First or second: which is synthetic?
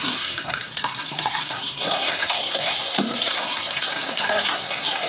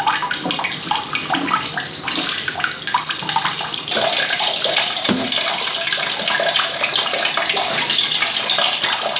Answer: first